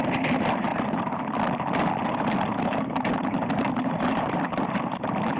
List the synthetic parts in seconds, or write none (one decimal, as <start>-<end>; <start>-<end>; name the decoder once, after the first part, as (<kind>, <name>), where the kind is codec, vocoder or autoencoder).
0.7-1.2 (vocoder, BigVGAN v2); 2.0-5.4